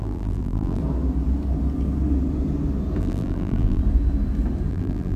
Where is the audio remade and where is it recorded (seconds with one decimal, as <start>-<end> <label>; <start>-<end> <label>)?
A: 0.0-0.8 remade; 0.8-3.0 recorded; 3.0-3.8 remade; 3.8-4.7 recorded; 4.7-5.2 remade